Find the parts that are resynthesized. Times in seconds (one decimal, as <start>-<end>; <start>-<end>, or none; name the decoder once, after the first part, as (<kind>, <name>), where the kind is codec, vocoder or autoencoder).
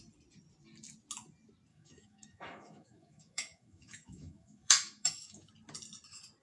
1.7-5.5 (autoencoder, DAC-VAE)